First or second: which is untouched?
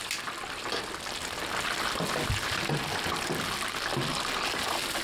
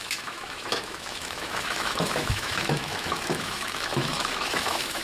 first